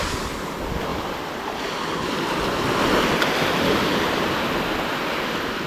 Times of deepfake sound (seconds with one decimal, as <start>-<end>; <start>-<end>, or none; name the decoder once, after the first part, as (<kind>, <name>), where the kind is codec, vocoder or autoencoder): 0.9-2.2 (vocoder, BigVGAN v2)